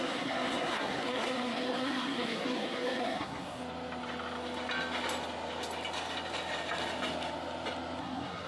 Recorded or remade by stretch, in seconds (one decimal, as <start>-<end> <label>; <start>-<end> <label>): 0.0-3.6 remade; 3.6-8.0 recorded; 8.0-8.5 remade

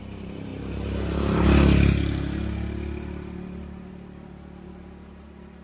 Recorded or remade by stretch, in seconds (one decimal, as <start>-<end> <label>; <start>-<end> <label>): 0.0-0.5 remade; 0.5-3.9 recorded; 3.9-5.6 remade

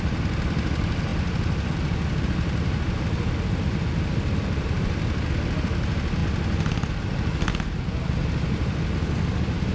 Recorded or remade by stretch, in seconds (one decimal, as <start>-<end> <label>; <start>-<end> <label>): 0.0-9.7 recorded

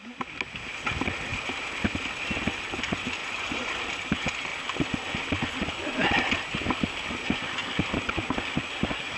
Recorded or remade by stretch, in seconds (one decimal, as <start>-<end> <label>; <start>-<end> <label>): 0.0-3.2 recorded; 3.2-3.7 remade; 3.7-9.2 recorded

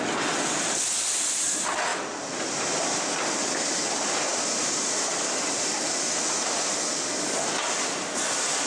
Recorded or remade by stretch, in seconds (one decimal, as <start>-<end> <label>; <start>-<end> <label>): 0.0-8.7 recorded

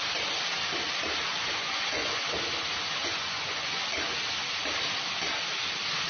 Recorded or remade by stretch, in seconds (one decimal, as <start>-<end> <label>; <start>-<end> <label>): 0.0-1.3 recorded; 1.3-2.2 remade; 2.2-3.0 recorded; 3.0-3.8 remade; 3.8-6.1 recorded

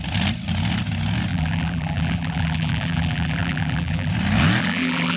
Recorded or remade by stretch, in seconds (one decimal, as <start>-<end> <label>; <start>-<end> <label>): 0.0-1.3 recorded; 1.3-4.1 remade; 4.1-4.6 recorded; 4.6-5.2 remade